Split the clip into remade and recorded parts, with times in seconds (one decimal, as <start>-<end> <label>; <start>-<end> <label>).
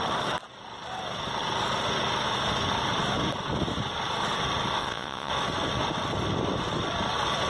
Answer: 0.0-4.8 recorded; 4.8-5.3 remade; 5.3-7.5 recorded